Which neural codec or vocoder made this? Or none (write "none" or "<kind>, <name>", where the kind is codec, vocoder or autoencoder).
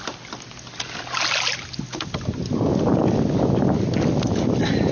none